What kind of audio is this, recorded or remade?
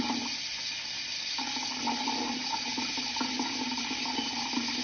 recorded